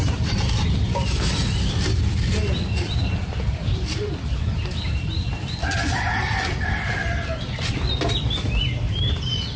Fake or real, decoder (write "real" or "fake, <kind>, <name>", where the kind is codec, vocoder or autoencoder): fake, vocoder, BigVGAN v2